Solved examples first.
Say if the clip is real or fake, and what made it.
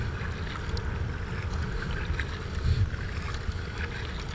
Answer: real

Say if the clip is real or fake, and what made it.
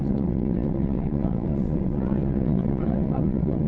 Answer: fake, vocoder, WaveNeXt